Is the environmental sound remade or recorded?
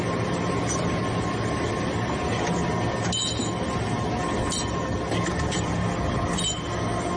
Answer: recorded